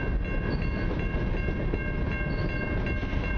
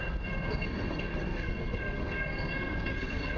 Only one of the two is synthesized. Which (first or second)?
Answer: second